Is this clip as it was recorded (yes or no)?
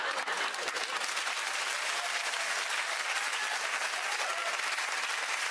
yes